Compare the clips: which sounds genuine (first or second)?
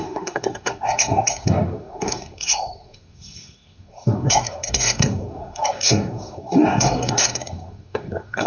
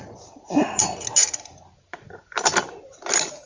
second